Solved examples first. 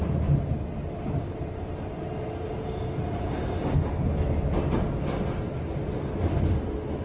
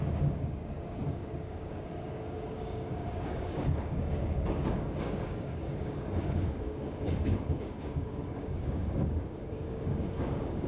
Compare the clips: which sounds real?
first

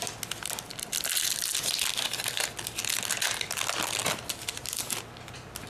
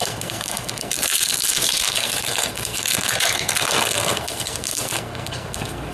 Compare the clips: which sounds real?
first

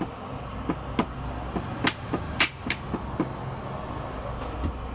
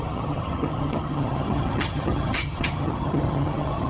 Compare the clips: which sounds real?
first